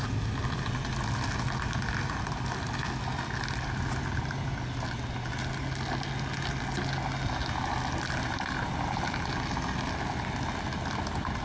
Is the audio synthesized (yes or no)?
no